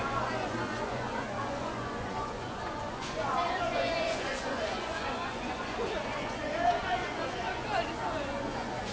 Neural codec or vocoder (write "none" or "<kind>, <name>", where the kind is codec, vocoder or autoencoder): vocoder, Vocos